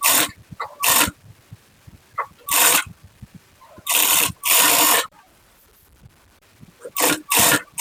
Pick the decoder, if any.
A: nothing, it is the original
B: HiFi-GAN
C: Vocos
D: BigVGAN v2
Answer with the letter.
D